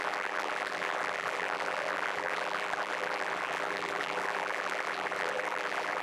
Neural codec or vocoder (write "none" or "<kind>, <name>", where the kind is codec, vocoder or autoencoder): vocoder, BigVGAN v2